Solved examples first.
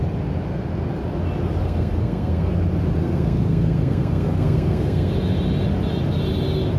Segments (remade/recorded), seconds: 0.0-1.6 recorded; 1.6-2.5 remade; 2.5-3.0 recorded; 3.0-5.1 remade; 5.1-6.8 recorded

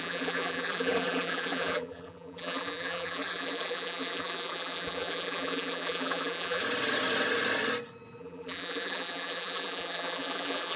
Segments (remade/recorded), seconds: 0.0-6.6 remade; 6.6-8.2 recorded; 8.2-10.8 remade

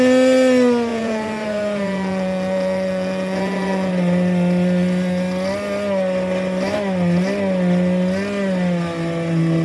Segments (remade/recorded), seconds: 0.0-0.9 recorded; 0.9-3.9 remade; 3.9-9.6 recorded

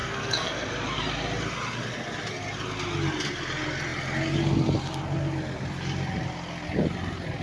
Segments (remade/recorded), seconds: 0.0-0.7 remade; 0.7-7.4 recorded

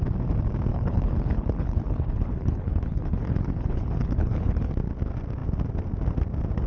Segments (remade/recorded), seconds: 0.0-0.7 recorded; 0.7-4.7 remade; 4.7-6.7 recorded